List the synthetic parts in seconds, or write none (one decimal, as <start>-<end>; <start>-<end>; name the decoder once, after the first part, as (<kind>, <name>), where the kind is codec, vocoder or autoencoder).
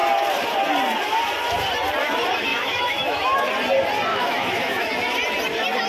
2.5-3.5 (autoencoder, DAC-VAE); 4.1-4.9